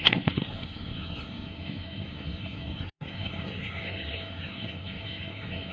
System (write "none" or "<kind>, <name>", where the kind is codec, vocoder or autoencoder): codec, SNAC